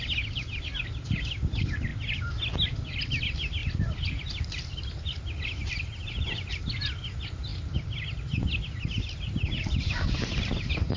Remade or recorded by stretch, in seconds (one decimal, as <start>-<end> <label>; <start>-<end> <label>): 0.0-11.0 recorded